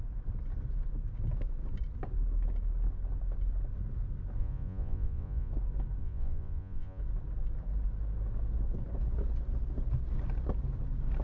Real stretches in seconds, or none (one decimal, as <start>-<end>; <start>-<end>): 0.0-4.4; 5.5-6.0; 7.0-11.2